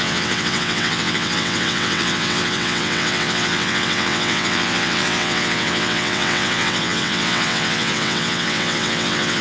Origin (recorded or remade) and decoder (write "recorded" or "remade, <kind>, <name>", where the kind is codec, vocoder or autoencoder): remade, vocoder, WaveNeXt